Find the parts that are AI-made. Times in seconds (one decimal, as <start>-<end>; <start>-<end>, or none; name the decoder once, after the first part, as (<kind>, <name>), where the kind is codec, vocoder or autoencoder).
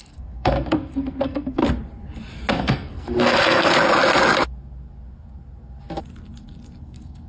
0.0-1.6 (codec, SNAC); 2.5-3.7; 6.8-7.3